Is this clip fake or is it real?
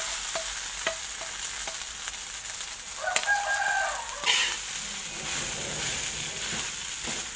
real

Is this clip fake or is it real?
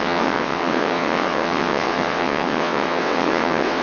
fake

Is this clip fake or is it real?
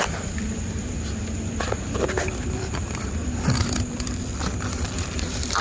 fake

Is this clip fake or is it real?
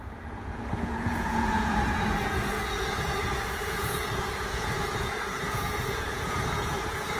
fake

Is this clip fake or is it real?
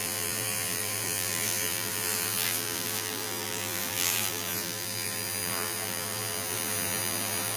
fake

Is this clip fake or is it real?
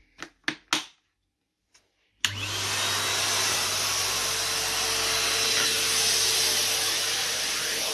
real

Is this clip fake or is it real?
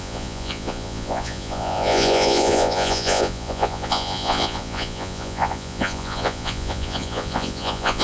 fake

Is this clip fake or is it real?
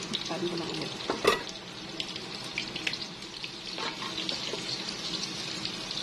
real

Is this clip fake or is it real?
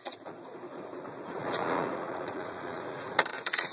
fake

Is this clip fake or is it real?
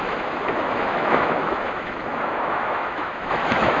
fake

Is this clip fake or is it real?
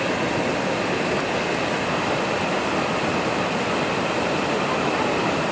real